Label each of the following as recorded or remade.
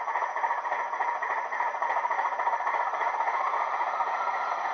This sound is remade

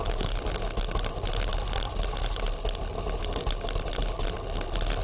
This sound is recorded